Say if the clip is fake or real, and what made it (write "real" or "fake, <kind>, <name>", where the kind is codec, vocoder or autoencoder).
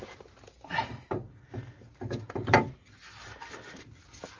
real